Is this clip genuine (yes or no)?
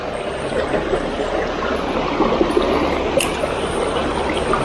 yes